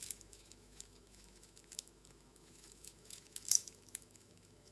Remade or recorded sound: remade